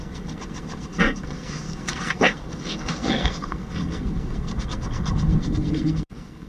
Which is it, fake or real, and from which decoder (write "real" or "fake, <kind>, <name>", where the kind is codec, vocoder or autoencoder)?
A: fake, codec, SNAC